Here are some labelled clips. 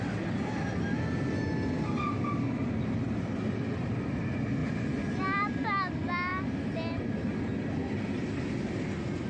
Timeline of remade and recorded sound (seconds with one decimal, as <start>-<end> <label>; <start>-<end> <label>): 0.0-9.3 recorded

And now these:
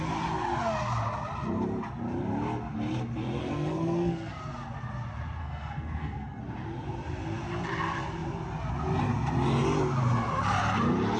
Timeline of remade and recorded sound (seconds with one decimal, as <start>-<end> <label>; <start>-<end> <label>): 0.0-3.4 recorded; 3.4-4.4 remade; 4.4-5.4 recorded; 5.4-6.4 remade; 6.4-11.2 recorded

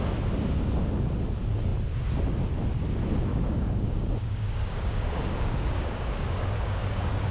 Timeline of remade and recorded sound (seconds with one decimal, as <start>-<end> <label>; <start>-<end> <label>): 0.0-3.3 recorded; 3.3-7.3 remade

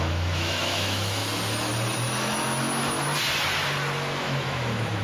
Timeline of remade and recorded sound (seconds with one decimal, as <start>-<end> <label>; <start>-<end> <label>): 0.0-1.2 remade; 1.2-4.2 recorded; 4.2-5.0 remade

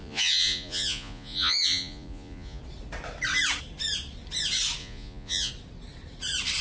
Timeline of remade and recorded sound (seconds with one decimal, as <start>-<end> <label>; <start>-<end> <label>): 0.0-2.6 remade; 2.6-4.8 recorded; 4.8-5.5 remade; 5.5-6.6 recorded

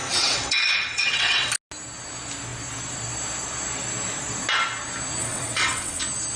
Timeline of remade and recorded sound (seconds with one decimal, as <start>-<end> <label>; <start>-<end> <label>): 0.0-1.5 remade; 1.5-5.2 recorded; 5.2-6.0 remade; 6.0-6.4 recorded

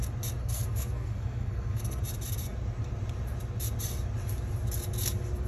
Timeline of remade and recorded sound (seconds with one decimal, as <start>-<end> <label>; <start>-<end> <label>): 0.0-0.4 recorded; 0.4-2.0 remade; 2.0-5.5 recorded

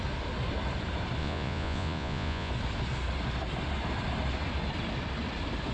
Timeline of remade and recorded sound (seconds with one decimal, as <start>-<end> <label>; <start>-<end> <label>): 0.0-1.2 recorded; 1.2-2.5 remade; 2.5-5.7 recorded